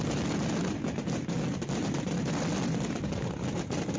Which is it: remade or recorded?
recorded